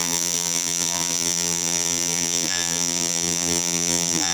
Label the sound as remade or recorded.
remade